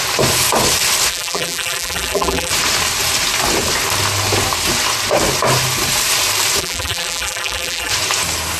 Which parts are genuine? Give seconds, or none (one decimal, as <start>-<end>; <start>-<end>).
0.0-1.1; 2.5-6.6; 7.9-8.6